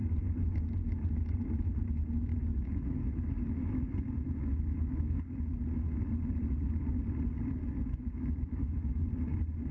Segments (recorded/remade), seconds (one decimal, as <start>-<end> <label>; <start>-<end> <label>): 0.0-2.3 recorded; 2.3-5.2 remade; 5.2-7.6 recorded; 7.6-9.1 remade; 9.1-9.7 recorded